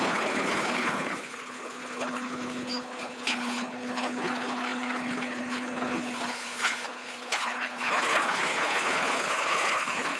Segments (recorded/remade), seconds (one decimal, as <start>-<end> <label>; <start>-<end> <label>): 0.0-10.2 remade